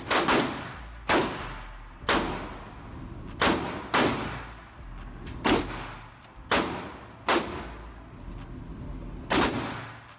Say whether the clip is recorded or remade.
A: recorded